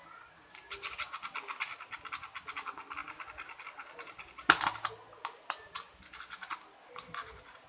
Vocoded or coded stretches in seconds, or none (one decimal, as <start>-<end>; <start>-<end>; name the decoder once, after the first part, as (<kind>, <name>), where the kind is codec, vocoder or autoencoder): none

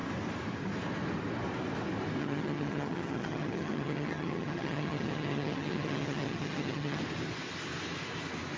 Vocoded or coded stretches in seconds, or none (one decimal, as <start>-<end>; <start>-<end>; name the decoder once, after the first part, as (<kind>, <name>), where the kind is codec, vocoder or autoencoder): 2.2-7.0 (vocoder, HiFi-GAN)

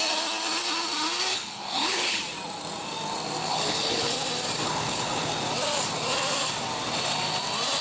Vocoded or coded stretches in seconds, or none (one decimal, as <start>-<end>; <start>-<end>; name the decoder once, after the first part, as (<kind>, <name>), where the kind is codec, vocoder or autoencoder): 1.3-2.2 (codec, HILCodec); 3.4-4.1; 4.6-5.3

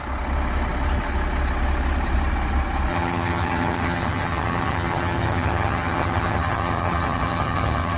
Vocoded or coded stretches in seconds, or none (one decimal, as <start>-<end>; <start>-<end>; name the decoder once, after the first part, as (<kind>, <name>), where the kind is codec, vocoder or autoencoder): 2.9-8.0 (vocoder, HiFi-GAN)

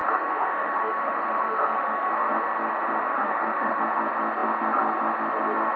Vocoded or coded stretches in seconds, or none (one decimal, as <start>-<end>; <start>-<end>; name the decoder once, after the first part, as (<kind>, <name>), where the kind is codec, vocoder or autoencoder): 0.0-2.1 (autoencoder, DAC-VAE); 3.1-3.8

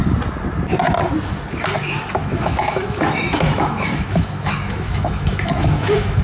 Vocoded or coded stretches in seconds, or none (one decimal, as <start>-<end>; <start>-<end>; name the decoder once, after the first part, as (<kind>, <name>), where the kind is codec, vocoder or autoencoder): 2.2-6.2 (autoencoder, DAC-VAE)

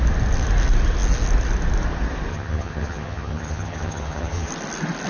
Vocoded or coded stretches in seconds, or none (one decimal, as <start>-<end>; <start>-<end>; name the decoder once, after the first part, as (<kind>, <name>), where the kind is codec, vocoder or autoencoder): 2.3-4.5 (vocoder, HiFi-GAN)